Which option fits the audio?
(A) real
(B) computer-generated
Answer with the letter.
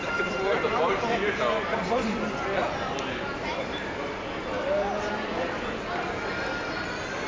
A